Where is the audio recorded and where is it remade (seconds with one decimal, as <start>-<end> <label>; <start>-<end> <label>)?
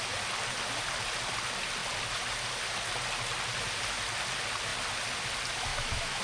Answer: 0.0-5.7 recorded; 5.7-6.2 remade